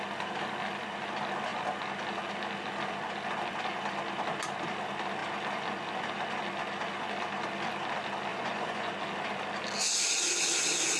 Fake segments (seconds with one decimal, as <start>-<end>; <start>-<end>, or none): 8.3-8.9